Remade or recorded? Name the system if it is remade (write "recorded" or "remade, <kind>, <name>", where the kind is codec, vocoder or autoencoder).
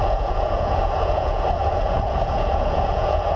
remade, vocoder, Vocos